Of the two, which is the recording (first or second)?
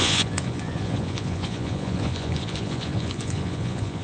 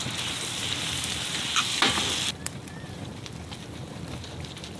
second